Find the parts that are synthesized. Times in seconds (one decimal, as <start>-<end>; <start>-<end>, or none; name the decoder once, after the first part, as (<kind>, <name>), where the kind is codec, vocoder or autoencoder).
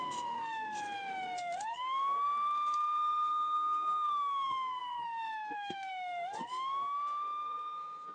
0.0-8.1 (codec, SNAC)